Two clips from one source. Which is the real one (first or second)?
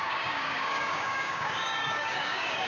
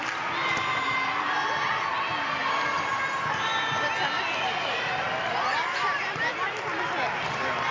second